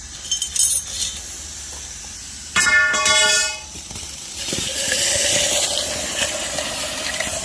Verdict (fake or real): real